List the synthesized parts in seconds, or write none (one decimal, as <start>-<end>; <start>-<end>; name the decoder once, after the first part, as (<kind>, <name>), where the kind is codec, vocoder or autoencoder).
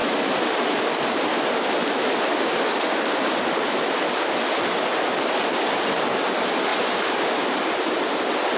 none